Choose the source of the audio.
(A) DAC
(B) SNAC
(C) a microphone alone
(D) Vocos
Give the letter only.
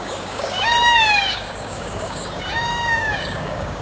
A